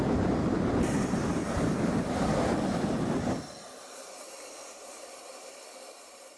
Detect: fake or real real